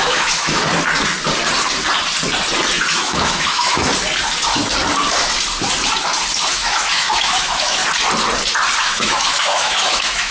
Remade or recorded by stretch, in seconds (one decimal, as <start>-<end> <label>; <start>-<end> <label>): 0.0-0.6 remade; 0.6-2.9 recorded; 2.9-3.9 remade; 3.9-6.5 recorded; 6.5-7.8 remade; 7.8-8.8 recorded; 8.8-10.3 remade